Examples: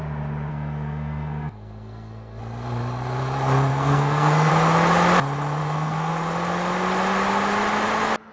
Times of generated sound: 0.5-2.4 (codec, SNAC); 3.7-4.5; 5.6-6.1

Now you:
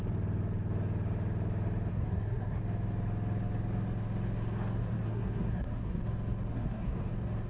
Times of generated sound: 1.9-2.6 (codec, SNAC); 4.8-6.0; 6.5-7.1

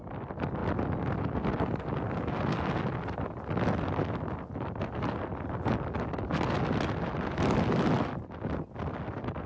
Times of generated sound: none

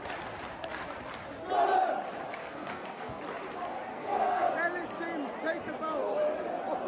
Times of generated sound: 2.4-3.2 (codec, SNAC); 3.9-4.5

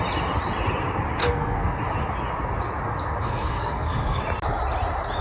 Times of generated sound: 1.2-1.8 (codec, SNAC); 3.2-4.2

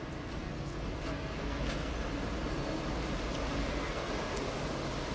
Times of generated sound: 0.4-1.9 (codec, SNAC); 3.6-4.1

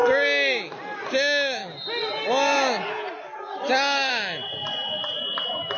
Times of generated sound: none

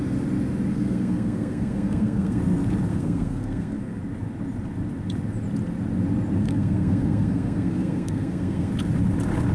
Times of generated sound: 0.7-2.4 (codec, SNAC); 2.9-4.0; 6.4-8.7